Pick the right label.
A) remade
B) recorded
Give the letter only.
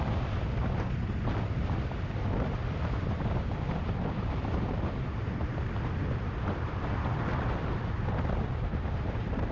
A